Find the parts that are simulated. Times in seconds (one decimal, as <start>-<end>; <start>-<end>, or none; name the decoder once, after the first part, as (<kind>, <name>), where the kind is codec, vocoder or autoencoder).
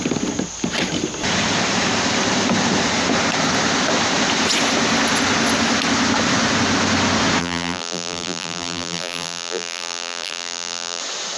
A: 7.4-11.0 (vocoder, BigVGAN v2)